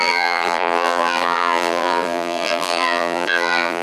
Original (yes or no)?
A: no